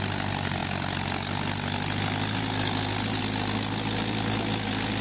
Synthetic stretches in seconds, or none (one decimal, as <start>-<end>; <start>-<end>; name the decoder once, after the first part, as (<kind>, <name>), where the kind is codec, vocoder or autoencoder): none